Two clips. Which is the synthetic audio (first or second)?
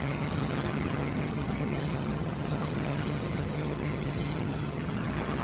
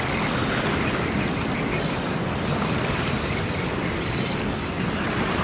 first